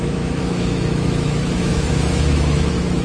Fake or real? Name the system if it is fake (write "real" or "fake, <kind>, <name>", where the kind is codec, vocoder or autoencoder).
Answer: fake, autoencoder, DAC-VAE